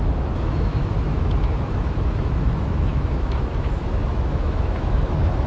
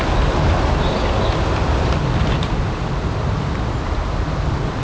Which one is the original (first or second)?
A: second